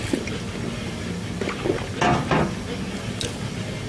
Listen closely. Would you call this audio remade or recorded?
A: recorded